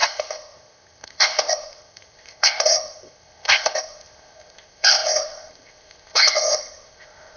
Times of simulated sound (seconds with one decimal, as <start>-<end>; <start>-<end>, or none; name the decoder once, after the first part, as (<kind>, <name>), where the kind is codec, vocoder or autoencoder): 0.0-7.4 (codec, ZipCodec)